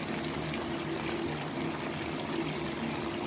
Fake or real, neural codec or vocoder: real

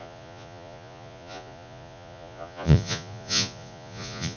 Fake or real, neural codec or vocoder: fake, vocoder, Vocos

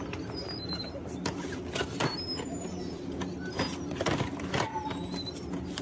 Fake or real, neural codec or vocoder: real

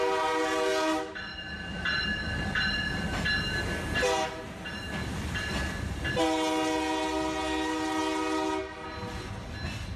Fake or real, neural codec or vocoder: real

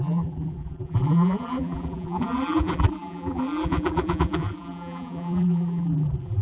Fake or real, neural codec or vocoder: fake, vocoder, BigVGAN v2